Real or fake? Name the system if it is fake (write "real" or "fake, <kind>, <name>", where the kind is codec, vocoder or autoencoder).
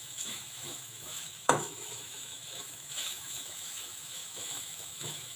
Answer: fake, autoencoder, DAC-VAE